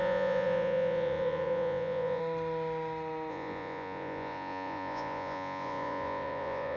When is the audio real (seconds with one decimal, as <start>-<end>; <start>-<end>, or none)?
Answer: 2.2-3.3